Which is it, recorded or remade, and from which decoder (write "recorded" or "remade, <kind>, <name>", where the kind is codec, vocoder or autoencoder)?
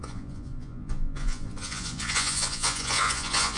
remade, vocoder, Vocos